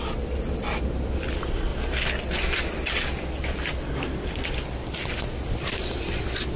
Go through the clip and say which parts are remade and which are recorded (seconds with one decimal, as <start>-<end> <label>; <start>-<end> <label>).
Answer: 0.0-6.6 recorded